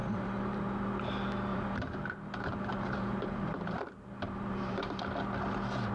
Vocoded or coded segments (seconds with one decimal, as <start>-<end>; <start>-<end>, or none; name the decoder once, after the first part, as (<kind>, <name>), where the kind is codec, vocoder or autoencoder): 0.0-0.9 (vocoder, BigVGAN v2); 1.5-5.0